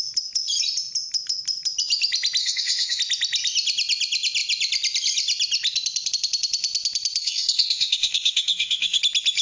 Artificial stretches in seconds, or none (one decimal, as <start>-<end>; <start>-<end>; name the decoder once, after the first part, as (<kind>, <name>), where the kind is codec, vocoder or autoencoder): 2.4-3.0 (codec, DAC); 7.2-9.0